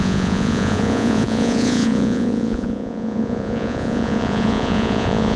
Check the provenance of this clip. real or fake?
fake